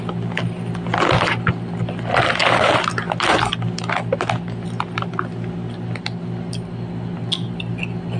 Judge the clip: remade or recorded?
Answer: recorded